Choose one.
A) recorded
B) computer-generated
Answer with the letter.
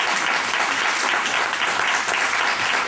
A